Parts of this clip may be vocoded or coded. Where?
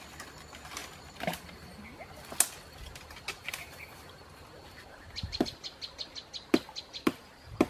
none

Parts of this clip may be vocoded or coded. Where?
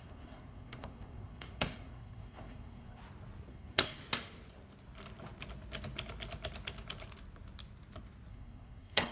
0.0-3.0 (codec, SNAC); 3.5-4.0; 8.3-9.1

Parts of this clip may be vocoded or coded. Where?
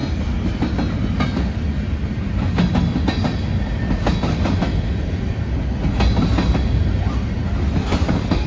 none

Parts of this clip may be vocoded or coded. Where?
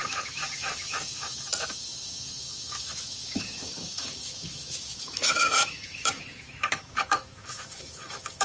0.0-8.4 (autoencoder, DAC-VAE)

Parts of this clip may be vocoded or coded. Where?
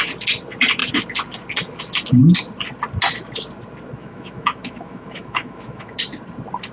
4.0-6.0 (autoencoder, DAC-VAE)